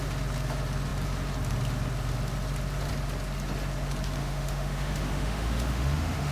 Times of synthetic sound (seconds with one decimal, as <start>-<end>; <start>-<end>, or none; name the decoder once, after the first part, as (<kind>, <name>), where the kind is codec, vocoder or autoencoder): 4.2-6.3 (autoencoder, DAC-VAE)